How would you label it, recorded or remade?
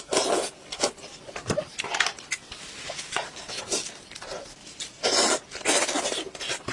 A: remade